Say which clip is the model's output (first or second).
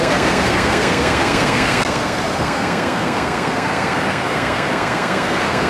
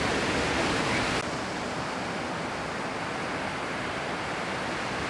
first